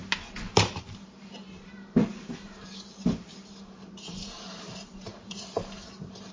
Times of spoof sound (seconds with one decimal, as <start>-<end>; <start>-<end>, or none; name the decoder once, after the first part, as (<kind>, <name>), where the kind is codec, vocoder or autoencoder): 0.5-6.3 (vocoder, BigVGAN v2)